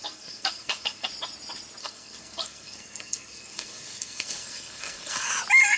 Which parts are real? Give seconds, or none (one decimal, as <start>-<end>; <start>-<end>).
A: 1.1-1.8; 5.3-5.8